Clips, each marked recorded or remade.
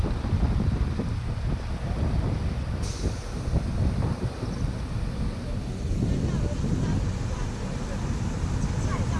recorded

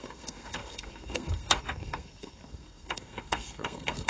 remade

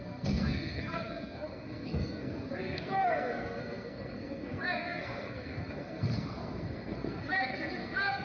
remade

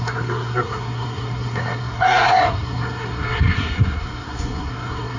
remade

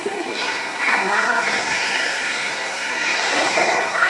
remade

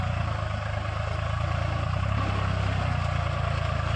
recorded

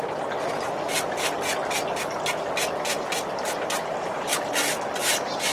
recorded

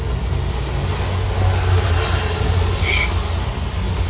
recorded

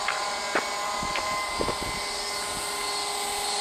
recorded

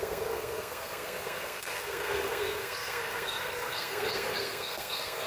remade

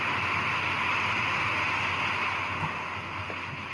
recorded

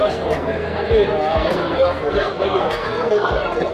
remade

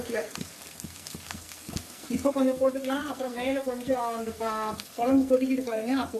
remade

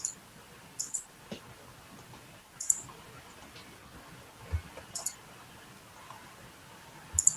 recorded